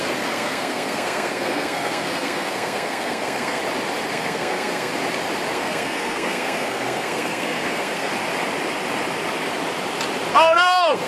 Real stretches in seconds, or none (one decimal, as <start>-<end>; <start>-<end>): 3.6-4.1; 4.9-5.5; 8.1-10.3